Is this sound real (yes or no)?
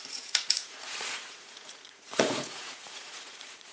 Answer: no